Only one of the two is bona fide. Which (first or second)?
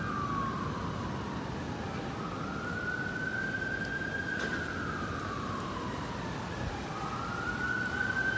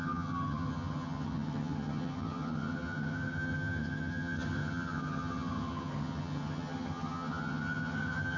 first